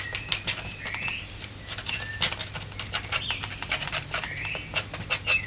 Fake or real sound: fake